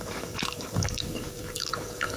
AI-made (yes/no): yes